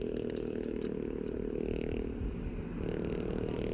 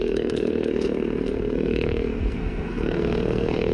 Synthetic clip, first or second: second